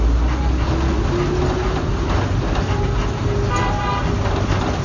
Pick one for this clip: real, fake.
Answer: real